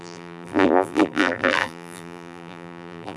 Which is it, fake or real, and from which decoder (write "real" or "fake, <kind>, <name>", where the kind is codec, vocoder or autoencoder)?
fake, vocoder, BigVGAN v2